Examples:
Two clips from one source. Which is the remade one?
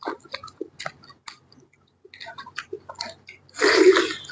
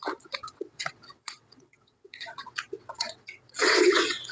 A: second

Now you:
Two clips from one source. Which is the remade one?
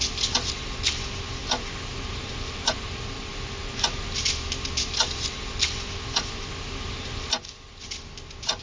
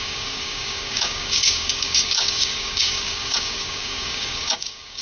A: second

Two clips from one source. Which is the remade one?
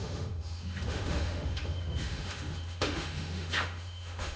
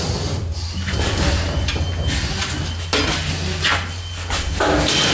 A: first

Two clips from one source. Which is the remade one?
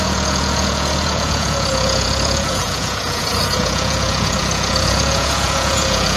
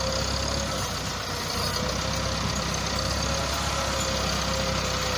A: first